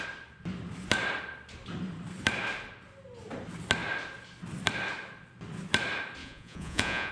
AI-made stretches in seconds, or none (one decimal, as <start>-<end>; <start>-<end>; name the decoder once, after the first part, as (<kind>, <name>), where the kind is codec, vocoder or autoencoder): 6.2-7.1 (vocoder, Vocos)